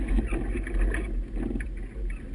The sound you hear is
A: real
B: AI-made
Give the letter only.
A